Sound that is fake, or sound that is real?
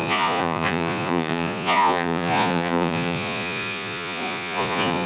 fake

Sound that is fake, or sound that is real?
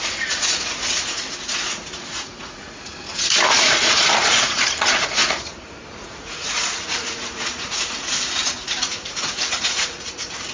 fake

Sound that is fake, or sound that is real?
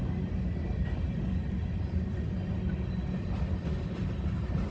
real